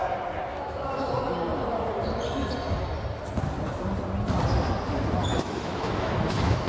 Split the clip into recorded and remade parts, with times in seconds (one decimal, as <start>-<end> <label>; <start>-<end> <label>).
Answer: 0.0-0.5 recorded; 0.5-1.1 remade; 1.1-5.3 recorded; 5.3-6.7 remade